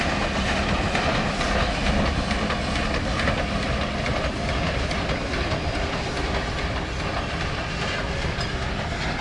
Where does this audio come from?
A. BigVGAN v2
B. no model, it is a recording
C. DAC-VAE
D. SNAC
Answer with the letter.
B